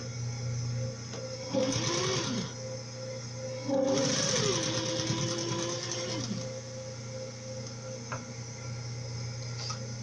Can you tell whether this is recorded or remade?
recorded